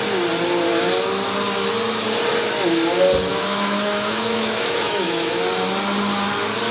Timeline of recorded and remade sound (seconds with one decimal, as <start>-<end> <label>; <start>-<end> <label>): 0.0-3.3 recorded; 3.3-5.3 remade; 5.3-6.7 recorded